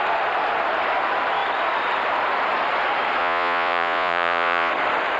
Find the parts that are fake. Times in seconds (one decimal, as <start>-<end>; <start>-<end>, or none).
3.2-4.7